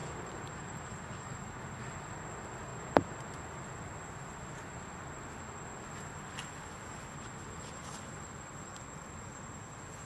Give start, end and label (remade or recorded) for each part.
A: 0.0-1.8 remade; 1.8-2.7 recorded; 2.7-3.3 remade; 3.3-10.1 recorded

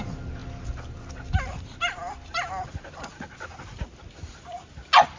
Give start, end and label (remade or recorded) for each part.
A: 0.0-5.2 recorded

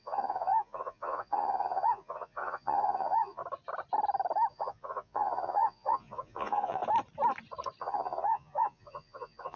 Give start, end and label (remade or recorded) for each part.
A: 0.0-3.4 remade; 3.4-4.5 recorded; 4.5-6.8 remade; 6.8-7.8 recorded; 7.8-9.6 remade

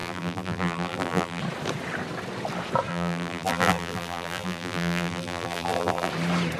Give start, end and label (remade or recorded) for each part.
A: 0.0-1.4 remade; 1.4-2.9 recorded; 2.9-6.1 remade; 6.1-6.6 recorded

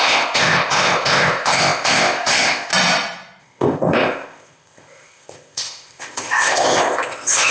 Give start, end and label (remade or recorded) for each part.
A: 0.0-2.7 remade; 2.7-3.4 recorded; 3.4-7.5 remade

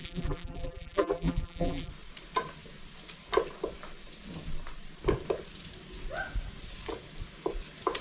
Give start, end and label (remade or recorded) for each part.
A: 0.0-1.9 remade; 1.9-8.0 recorded

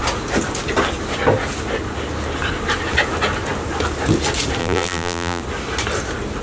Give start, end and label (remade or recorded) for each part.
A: 0.0-4.6 recorded; 4.6-5.4 remade; 5.4-6.4 recorded

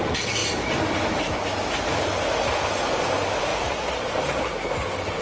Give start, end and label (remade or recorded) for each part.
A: 0.0-5.2 recorded